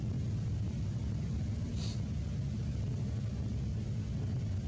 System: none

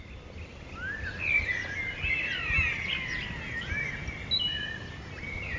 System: none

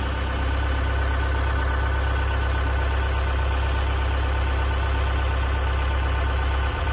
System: vocoder, BigVGAN v2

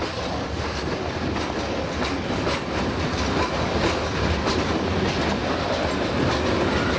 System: none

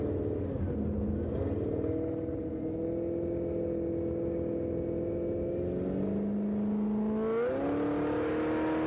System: none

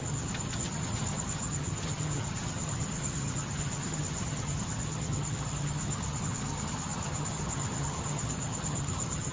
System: vocoder, HiFi-GAN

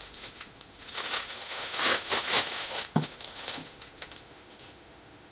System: autoencoder, DAC-VAE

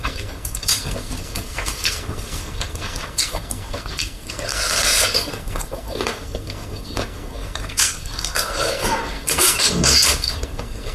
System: codec, SNAC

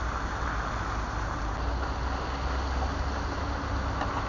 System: none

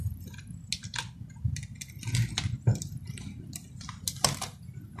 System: none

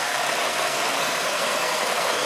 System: codec, SNAC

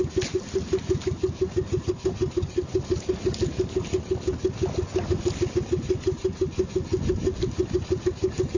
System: none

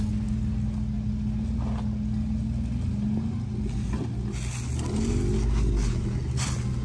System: none